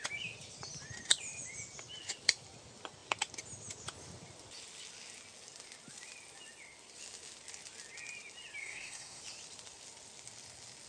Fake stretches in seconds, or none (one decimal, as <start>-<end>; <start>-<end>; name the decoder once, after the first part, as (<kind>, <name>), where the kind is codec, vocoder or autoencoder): 8.6-9.2 (codec, SNAC)